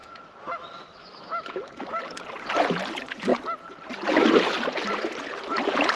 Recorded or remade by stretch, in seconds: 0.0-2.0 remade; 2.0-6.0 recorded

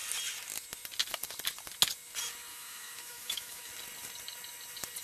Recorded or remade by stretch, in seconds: 0.0-2.5 recorded; 2.5-3.7 remade; 3.7-5.0 recorded